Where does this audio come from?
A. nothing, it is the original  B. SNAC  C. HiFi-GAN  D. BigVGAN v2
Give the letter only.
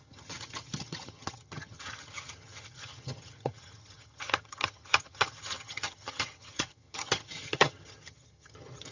C